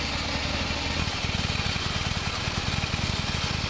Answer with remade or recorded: recorded